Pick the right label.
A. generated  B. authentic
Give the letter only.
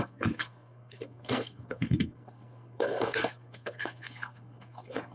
A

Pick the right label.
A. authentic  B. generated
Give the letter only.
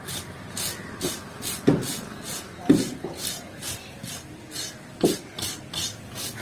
A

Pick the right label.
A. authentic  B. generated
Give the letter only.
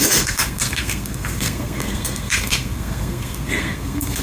B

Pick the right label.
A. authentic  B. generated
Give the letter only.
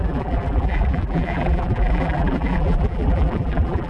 B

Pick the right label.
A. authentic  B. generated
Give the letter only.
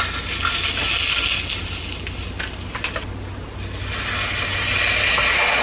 A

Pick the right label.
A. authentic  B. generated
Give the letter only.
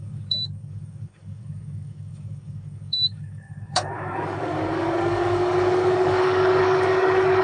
B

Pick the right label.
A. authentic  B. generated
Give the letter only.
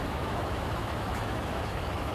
B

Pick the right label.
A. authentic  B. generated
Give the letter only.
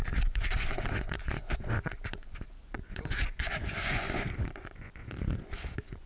B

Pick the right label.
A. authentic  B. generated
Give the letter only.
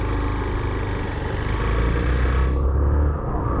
A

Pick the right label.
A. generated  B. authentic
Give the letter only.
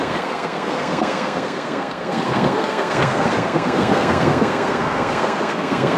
A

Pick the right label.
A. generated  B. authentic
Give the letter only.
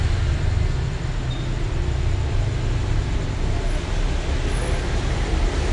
B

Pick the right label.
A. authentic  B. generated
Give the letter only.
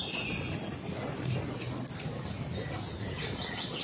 A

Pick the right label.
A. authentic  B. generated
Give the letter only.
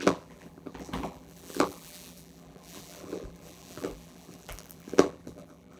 B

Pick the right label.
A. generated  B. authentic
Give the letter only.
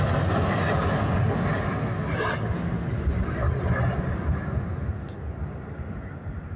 B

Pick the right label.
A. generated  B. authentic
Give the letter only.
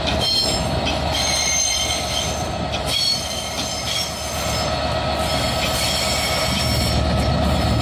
B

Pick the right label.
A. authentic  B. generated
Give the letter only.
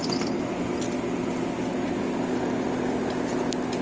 A